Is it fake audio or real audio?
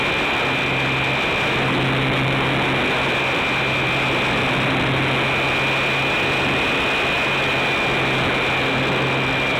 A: real